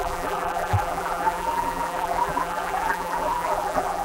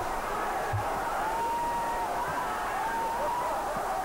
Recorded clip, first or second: second